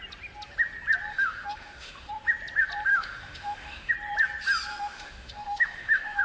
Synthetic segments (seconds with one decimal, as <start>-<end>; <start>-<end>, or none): 1.1-2.1; 2.9-3.9; 4.7-6.2